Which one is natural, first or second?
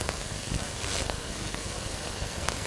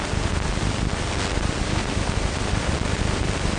second